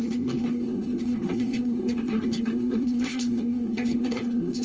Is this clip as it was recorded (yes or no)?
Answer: no